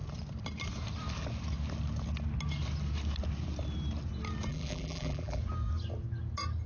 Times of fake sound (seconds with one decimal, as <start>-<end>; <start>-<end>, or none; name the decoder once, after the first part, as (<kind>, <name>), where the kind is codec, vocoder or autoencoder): 4.5-5.4 (vocoder, BigVGAN v2)